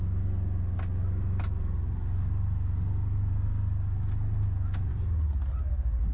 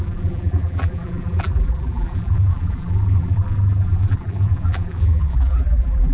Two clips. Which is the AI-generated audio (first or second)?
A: second